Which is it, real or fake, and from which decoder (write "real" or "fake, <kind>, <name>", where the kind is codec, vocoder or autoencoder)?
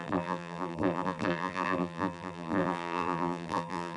fake, vocoder, BigVGAN v2